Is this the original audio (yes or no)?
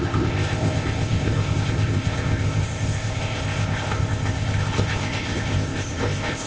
no